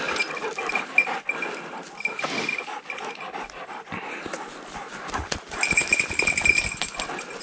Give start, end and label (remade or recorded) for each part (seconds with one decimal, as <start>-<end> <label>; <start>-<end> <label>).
0.0-7.4 recorded